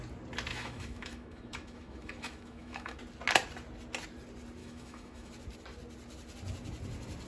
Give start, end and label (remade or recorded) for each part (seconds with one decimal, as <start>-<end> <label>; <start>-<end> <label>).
0.0-0.5 recorded; 0.5-3.0 remade; 3.0-4.6 recorded; 4.6-5.3 remade; 5.3-7.3 recorded